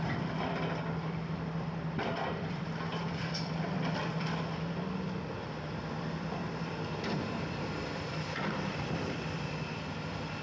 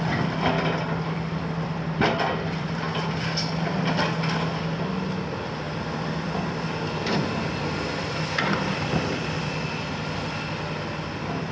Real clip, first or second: second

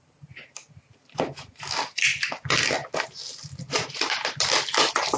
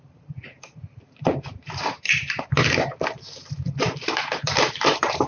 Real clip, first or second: first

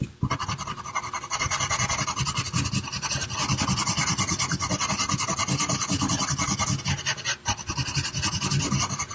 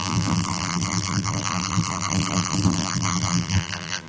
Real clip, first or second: first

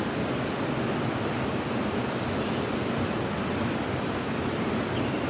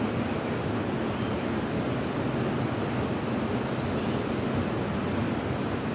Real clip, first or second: second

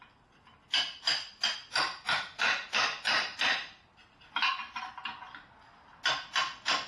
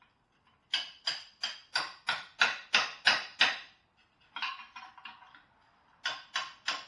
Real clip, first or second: first